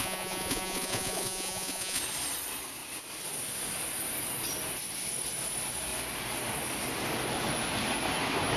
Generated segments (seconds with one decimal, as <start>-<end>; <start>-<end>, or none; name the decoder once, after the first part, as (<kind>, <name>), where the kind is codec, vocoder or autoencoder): 0.0-2.0 (vocoder, Vocos)

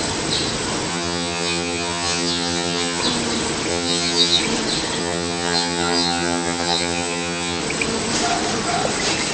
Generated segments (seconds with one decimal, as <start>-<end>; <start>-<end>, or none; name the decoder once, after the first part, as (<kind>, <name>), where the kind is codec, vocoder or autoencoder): 0.9-3.0 (vocoder, HiFi-GAN); 3.7-4.4; 5.0-7.6

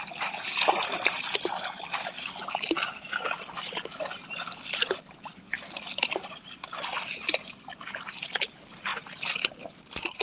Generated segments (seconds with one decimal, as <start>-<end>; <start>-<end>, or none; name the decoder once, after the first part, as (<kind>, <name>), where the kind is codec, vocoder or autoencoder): 8.9-9.7 (vocoder, BigVGAN v2)

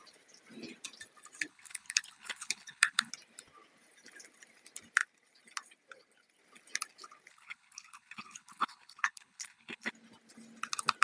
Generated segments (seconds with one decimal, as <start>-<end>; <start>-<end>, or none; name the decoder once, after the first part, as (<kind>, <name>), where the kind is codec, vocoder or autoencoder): 1.5-3.1 (codec, HILCodec); 7.3-9.9

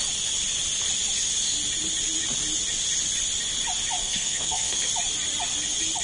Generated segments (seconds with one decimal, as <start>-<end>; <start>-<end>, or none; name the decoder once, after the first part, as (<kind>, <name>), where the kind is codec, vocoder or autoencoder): 4.0-4.9 (codec, SNAC)